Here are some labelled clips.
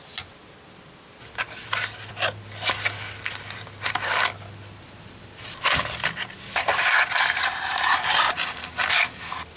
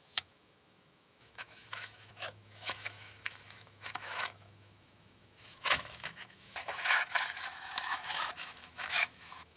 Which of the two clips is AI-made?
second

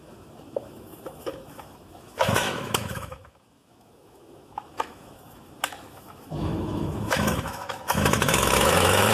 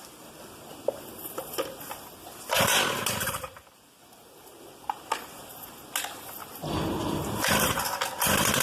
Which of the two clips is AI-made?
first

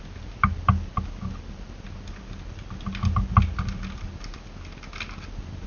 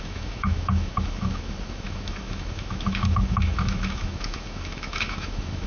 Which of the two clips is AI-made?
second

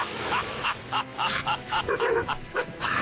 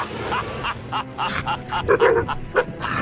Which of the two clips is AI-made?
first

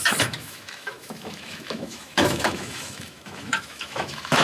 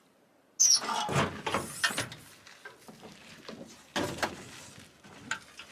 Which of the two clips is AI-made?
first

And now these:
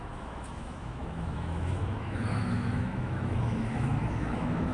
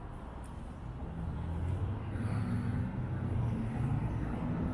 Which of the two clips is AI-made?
first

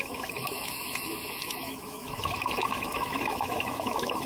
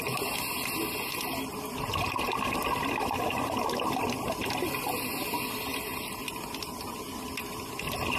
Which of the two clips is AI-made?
first